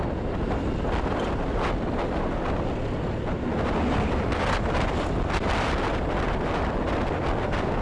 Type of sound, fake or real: real